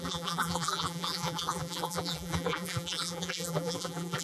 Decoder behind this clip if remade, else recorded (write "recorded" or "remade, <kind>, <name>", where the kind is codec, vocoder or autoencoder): remade, vocoder, BigVGAN v2